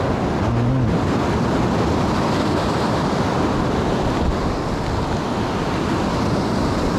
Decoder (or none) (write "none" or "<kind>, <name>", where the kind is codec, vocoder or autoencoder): none